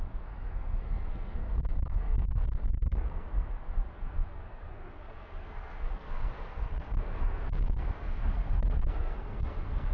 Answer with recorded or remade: remade